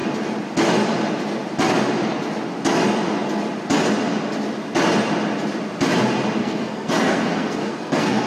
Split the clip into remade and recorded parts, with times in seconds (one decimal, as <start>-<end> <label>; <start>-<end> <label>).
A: 0.0-6.4 recorded; 6.4-8.3 remade